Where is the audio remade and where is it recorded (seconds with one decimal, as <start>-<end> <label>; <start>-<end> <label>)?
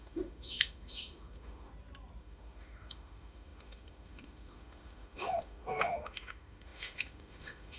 0.0-1.7 remade; 1.7-2.2 recorded; 2.2-7.8 remade